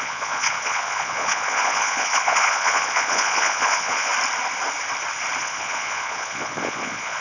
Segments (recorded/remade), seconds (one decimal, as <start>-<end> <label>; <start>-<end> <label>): 0.0-4.1 remade; 4.1-5.4 recorded; 5.4-7.2 remade